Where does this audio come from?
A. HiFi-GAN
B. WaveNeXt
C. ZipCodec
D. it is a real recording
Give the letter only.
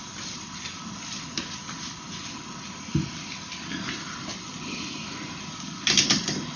D